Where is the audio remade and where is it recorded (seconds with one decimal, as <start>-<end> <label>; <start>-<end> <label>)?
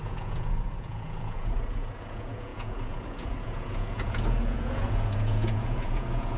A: 0.0-6.4 remade